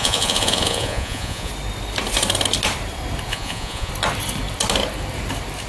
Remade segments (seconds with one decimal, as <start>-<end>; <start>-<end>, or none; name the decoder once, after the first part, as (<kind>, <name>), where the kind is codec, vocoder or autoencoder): 0.0-1.5 (vocoder, Vocos); 3.3-3.9